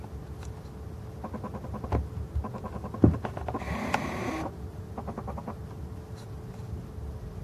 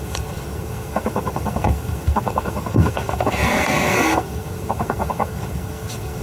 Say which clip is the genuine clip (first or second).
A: first